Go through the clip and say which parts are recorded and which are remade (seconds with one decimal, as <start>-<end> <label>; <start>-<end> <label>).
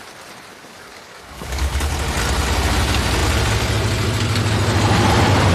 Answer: 0.0-0.5 recorded; 0.5-1.9 remade; 1.9-5.5 recorded